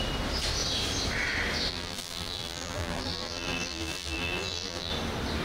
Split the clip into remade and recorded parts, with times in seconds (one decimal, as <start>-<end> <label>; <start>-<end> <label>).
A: 0.0-1.7 recorded; 1.7-4.9 remade; 4.9-5.4 recorded